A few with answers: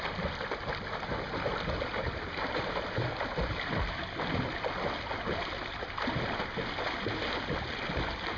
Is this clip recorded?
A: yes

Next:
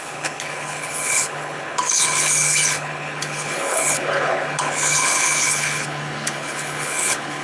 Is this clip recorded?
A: no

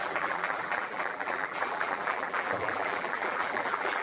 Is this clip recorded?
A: no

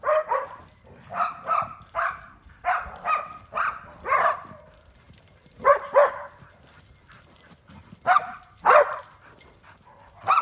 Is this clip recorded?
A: yes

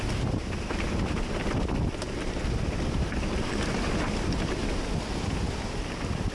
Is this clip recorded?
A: no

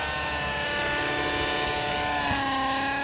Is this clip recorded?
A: yes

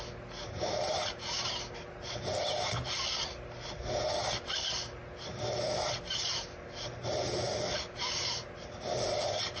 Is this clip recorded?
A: yes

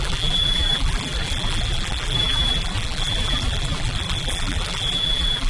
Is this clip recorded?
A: no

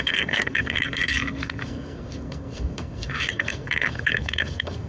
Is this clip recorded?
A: no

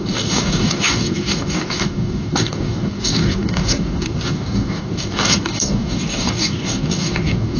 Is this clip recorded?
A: no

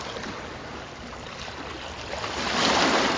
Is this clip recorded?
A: yes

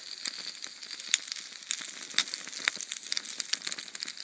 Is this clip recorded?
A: yes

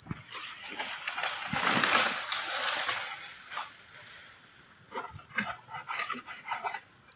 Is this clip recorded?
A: yes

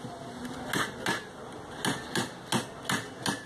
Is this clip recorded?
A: yes